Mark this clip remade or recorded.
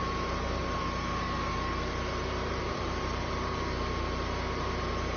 remade